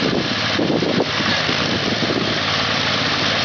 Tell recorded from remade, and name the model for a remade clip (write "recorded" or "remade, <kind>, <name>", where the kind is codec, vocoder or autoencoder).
recorded